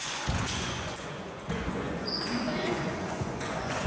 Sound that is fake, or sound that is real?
fake